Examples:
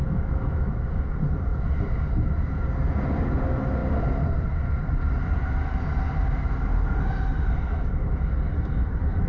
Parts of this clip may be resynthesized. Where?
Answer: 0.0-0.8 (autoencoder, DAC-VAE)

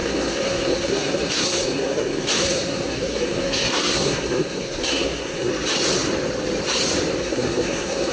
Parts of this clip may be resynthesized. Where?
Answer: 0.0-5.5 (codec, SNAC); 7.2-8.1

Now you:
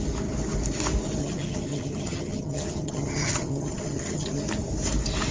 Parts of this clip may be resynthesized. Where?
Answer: 1.2-4.4 (vocoder, HiFi-GAN)

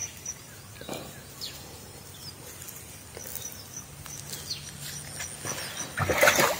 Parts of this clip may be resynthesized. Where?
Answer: none

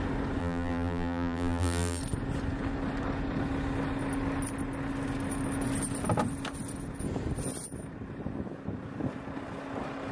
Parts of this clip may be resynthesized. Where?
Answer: 0.4-2.0 (vocoder, BigVGAN v2)

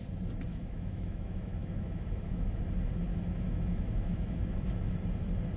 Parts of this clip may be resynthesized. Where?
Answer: 0.5-2.6 (autoencoder, DAC-VAE); 3.1-4.9

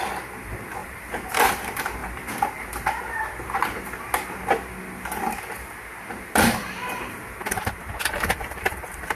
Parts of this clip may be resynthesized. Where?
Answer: 0.0-2.0 (vocoder, BigVGAN v2); 6.2-9.2